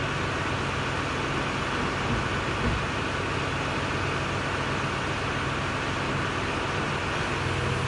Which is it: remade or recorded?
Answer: recorded